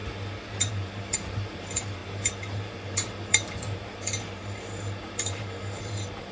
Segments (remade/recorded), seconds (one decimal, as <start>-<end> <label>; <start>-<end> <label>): 0.0-0.7 recorded; 0.7-6.3 remade